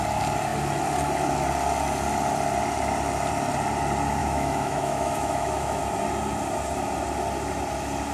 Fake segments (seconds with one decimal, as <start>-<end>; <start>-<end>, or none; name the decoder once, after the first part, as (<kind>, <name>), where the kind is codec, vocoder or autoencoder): 4.2-5.8 (autoencoder, DAC-VAE)

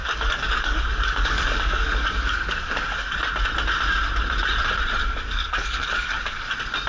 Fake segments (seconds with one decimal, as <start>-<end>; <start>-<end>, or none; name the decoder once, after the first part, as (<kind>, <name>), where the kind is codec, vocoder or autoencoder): 0.0-3.2 (codec, DAC); 5.0-6.5

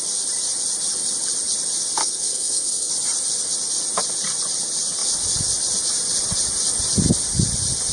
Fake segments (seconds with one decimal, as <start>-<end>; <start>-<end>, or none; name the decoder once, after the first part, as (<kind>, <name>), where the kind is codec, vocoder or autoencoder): 2.0-2.9 (codec, SNAC)

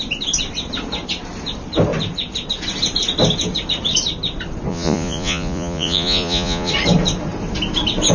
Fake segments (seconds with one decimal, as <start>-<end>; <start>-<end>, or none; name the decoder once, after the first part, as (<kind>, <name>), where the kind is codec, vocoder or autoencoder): 4.7-6.7 (vocoder, Vocos)

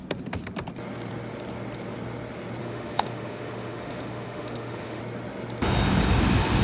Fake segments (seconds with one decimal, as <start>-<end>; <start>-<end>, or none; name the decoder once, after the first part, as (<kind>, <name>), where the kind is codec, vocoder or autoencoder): 2.6-5.0 (autoencoder, DAC-VAE)

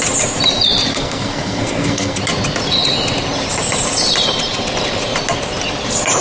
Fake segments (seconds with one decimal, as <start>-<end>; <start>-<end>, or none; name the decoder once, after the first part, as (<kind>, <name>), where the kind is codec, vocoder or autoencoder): 0.9-2.2 (codec, SNAC)

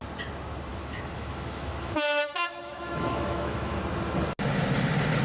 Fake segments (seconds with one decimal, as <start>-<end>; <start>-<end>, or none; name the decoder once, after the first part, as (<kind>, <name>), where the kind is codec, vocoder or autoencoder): 0.7-3.8 (autoencoder, DAC-VAE)

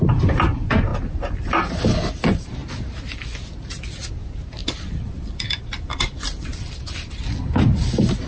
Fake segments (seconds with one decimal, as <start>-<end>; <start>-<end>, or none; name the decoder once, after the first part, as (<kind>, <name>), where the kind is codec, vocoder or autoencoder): 0.9-1.5 (vocoder, BigVGAN v2); 4.6-7.2